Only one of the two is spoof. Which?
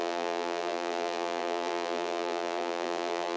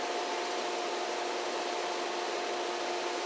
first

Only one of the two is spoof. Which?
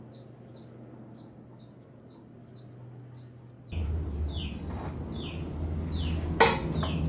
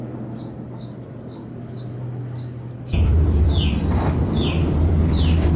second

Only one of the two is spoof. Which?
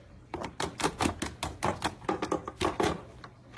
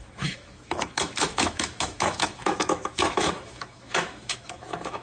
second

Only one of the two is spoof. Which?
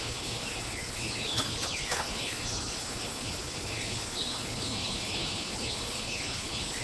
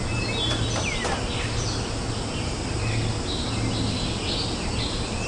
first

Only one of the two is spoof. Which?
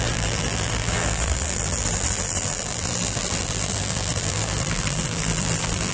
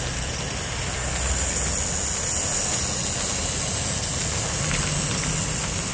first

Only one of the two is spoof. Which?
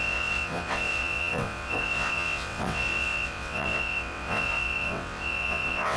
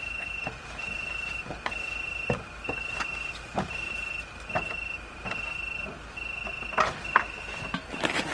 first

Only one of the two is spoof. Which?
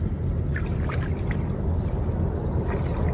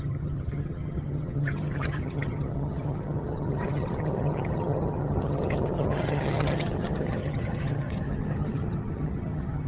second